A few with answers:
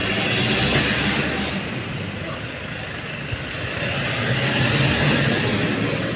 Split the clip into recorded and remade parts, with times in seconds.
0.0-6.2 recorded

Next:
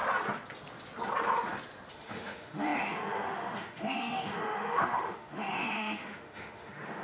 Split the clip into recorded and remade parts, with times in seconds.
0.0-1.9 recorded; 1.9-7.0 remade

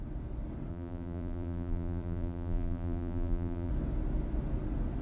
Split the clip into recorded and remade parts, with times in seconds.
0.0-0.7 recorded; 0.7-3.7 remade; 3.7-5.0 recorded